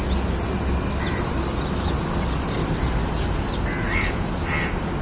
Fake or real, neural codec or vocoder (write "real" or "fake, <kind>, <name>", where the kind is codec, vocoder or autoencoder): real